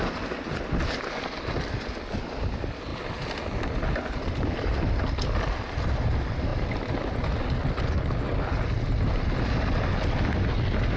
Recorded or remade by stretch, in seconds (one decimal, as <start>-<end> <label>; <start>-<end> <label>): 0.0-11.0 recorded